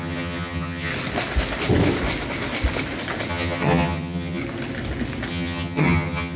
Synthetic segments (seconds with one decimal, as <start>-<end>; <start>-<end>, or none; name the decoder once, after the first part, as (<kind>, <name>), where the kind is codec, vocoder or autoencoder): 0.0-0.9 (vocoder, HiFi-GAN); 3.3-4.4; 5.3-6.4